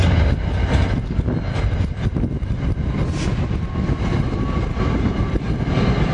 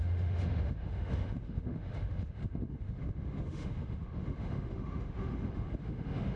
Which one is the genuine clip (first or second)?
first